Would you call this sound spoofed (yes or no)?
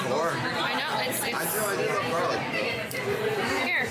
no